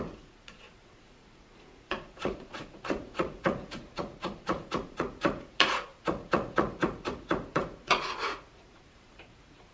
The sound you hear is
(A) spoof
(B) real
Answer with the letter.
A